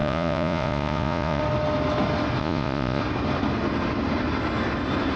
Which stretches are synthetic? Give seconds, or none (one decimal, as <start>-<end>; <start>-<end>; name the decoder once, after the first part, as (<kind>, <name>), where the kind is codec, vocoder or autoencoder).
0.0-1.4 (vocoder, Vocos); 2.4-3.0